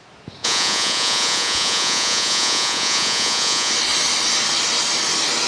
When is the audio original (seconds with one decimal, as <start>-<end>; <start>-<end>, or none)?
0.0-0.4; 3.7-5.5